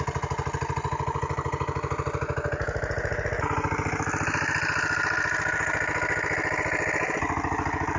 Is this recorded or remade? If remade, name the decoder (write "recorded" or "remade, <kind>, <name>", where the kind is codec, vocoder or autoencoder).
recorded